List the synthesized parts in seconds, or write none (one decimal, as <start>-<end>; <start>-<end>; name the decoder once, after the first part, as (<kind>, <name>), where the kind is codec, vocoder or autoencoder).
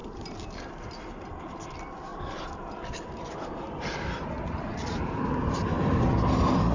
0.0-6.7 (vocoder, BigVGAN v2)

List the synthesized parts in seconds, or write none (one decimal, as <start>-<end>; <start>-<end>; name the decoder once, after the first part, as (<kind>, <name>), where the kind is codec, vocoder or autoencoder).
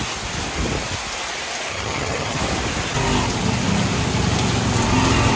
1.7-2.4 (vocoder, HiFi-GAN)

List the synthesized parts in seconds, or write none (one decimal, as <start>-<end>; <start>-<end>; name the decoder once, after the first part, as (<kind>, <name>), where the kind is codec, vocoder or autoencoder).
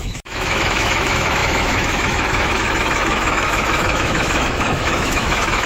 0.0-5.7 (autoencoder, DAC-VAE)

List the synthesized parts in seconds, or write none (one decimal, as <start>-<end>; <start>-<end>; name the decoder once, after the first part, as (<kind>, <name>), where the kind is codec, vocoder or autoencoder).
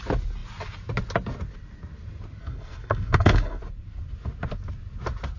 2.4-3.6 (codec, SNAC)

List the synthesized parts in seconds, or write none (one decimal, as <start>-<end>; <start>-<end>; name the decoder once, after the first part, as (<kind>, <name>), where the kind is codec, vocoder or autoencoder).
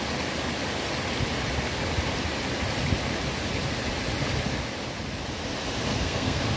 5.9-6.6 (codec, SNAC)